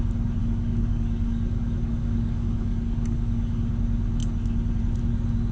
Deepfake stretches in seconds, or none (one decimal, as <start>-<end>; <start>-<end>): 0.4-3.7